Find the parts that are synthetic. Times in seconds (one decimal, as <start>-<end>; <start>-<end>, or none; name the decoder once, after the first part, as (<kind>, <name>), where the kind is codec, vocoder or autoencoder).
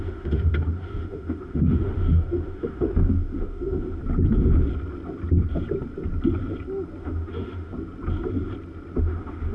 0.0-4.0 (autoencoder, DAC-VAE); 7.0-7.7; 9.0-9.5